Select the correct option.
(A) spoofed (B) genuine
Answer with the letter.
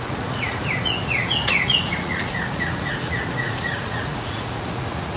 A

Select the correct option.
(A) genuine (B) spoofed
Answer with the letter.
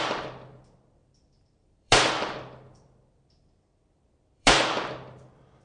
B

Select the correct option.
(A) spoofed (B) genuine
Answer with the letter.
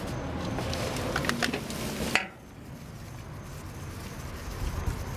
B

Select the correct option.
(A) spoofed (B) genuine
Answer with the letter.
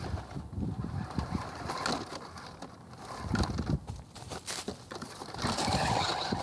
B